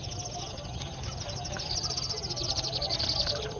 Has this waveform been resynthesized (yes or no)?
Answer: no